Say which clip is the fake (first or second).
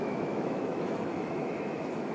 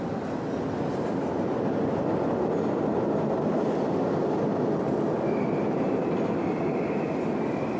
first